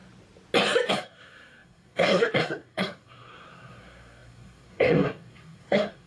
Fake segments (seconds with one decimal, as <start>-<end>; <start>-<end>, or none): 0.9-6.1